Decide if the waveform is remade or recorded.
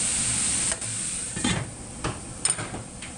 remade